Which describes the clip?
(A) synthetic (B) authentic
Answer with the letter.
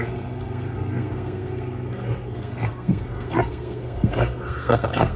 A